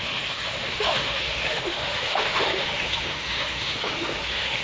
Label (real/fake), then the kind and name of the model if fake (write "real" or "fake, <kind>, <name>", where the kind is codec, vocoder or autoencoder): fake, autoencoder, DAC-VAE